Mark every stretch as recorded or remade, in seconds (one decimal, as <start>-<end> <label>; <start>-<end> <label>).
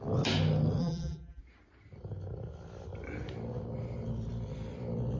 0.0-0.8 recorded; 0.8-1.4 remade; 1.4-5.2 recorded